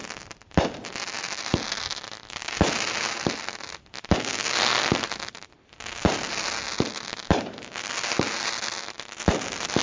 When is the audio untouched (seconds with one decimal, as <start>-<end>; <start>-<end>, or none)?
0.0-9.8